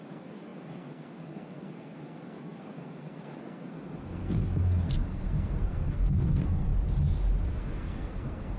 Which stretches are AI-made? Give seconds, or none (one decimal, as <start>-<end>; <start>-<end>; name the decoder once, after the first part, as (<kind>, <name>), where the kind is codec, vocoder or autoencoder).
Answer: 0.0-6.7 (codec, SNAC); 7.5-8.6